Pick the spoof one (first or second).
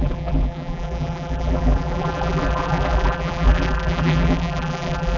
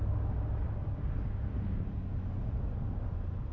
first